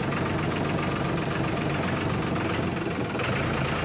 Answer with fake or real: real